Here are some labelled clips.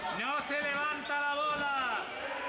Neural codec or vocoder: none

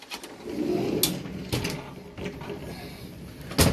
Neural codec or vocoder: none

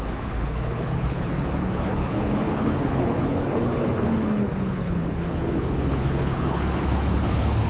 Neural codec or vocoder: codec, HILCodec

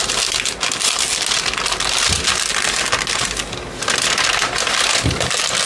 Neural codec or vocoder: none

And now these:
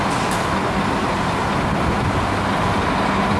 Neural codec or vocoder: none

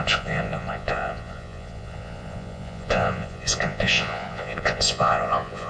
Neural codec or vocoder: vocoder, Vocos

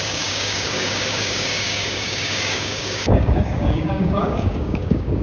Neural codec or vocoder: codec, DAC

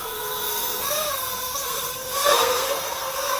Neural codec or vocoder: codec, SNAC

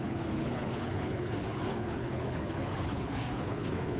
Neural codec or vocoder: codec, HILCodec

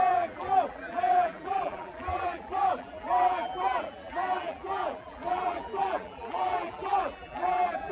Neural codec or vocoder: vocoder, BigVGAN v2